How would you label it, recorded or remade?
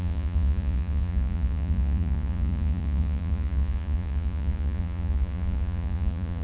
remade